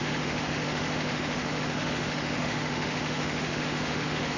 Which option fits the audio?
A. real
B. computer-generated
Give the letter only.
B